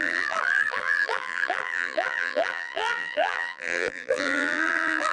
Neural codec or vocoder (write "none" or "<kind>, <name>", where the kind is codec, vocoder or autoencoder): vocoder, BigVGAN v2